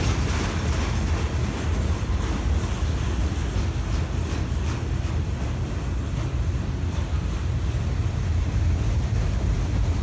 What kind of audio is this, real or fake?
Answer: real